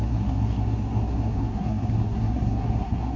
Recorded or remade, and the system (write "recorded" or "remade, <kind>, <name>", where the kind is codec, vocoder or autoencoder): remade, codec, SNAC